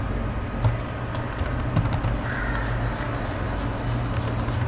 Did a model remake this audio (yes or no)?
no